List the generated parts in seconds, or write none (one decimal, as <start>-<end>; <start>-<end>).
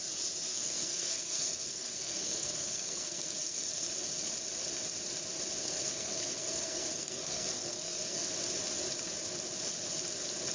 0.5-3.9; 5.6-8.3